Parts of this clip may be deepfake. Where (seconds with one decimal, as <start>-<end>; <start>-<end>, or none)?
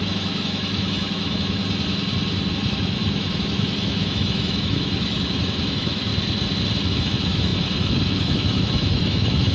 0.0-1.6; 2.5-6.1; 6.9-9.5